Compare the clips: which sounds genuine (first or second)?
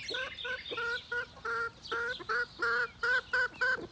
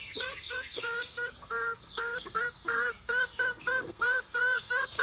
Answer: first